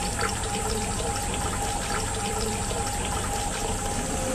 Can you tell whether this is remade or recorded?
recorded